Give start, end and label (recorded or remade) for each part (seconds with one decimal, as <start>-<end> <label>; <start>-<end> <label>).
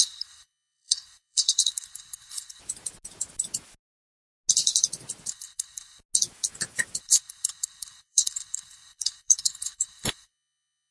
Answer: 0.0-2.6 remade; 2.6-5.3 recorded; 5.3-6.0 remade; 6.0-7.0 recorded; 7.0-10.9 remade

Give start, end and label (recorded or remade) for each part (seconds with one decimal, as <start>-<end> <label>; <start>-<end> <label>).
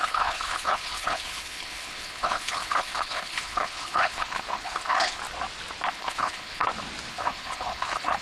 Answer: 0.0-5.2 remade; 5.2-5.9 recorded; 5.9-6.6 remade; 6.6-7.1 recorded; 7.1-8.2 remade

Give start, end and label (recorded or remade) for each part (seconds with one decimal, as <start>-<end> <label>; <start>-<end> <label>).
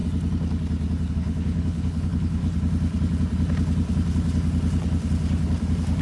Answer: 0.0-1.1 recorded; 1.1-2.4 remade; 2.4-6.0 recorded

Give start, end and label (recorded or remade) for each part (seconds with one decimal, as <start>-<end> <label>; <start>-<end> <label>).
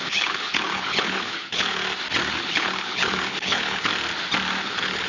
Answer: 0.0-1.8 remade; 1.8-2.3 recorded; 2.3-3.9 remade; 3.9-4.6 recorded; 4.6-5.1 remade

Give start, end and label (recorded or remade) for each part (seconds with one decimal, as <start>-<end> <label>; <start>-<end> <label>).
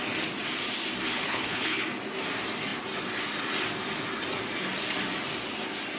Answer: 0.0-1.1 recorded; 1.1-1.8 remade; 1.8-6.0 recorded